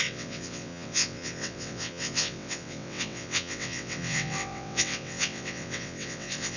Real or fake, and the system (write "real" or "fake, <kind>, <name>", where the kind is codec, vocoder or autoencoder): fake, vocoder, WaveNeXt